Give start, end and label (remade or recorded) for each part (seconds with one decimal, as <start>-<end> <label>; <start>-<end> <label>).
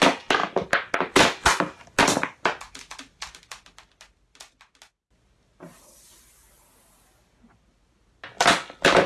0.0-9.1 recorded